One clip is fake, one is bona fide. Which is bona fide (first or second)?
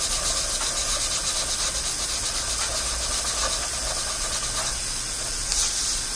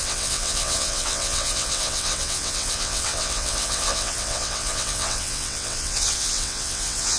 first